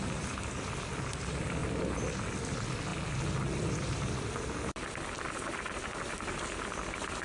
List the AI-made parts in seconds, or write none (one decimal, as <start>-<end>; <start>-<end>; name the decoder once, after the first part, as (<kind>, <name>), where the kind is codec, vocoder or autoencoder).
1.6-2.2 (vocoder, BigVGAN v2); 2.9-7.2